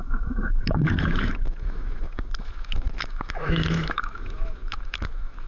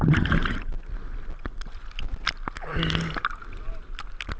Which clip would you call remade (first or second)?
first